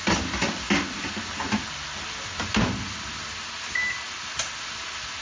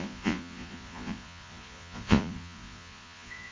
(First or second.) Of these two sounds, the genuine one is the first